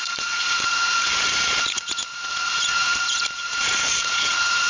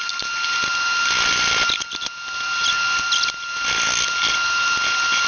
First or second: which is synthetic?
first